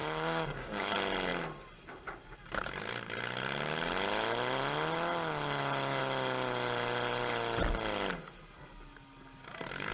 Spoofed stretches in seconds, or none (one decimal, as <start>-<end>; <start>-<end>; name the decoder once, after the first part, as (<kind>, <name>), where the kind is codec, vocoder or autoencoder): 0.0-0.9 (codec, DAC)